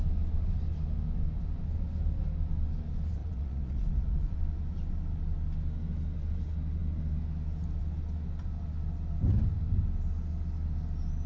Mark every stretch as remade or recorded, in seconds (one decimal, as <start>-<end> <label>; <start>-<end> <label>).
0.0-3.2 recorded; 3.2-4.3 remade; 4.3-11.3 recorded